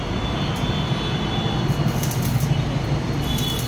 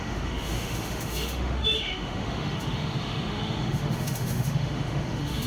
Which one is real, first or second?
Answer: first